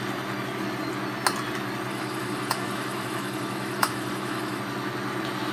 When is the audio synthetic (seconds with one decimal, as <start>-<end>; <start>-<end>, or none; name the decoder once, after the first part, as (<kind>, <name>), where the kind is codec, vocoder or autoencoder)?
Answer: 1.9-4.6 (autoencoder, DAC-VAE)